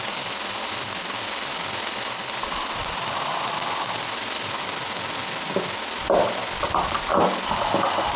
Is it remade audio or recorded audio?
recorded